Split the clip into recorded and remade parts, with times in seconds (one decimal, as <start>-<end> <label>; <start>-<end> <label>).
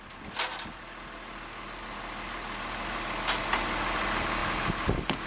0.0-5.3 recorded